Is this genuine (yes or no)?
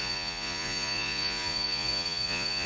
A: no